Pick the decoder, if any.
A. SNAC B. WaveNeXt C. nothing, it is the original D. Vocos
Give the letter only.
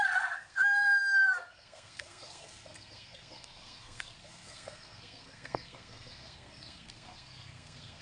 A